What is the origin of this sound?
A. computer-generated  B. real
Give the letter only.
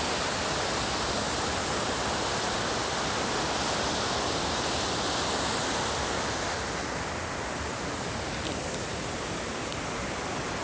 B